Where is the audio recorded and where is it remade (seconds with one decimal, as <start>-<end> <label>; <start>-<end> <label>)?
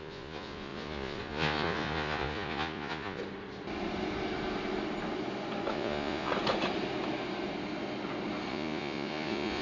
0.0-3.2 remade; 3.2-5.7 recorded; 5.7-6.3 remade; 6.3-8.5 recorded; 8.5-9.6 remade